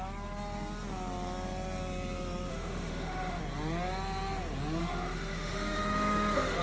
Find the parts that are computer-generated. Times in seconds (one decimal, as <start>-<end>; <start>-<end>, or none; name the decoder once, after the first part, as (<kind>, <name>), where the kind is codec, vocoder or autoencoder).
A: 2.5-3.4 (autoencoder, DAC-VAE); 4.8-6.6